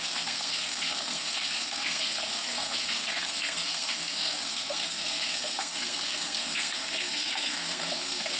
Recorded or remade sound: remade